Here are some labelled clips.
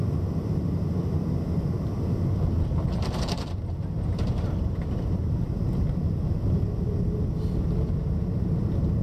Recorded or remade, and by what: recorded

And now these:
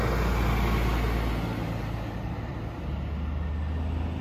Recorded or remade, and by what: recorded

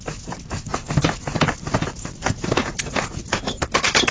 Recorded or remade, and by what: recorded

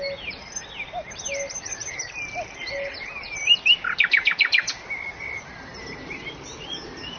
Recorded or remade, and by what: recorded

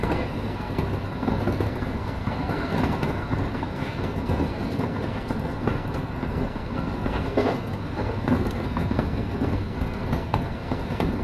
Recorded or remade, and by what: remade, codec, SNAC